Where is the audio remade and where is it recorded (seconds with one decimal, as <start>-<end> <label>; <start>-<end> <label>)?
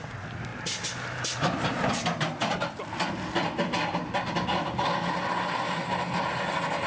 0.0-6.9 recorded